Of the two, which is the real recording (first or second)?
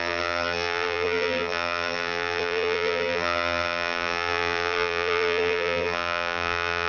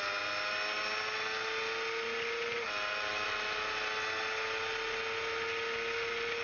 second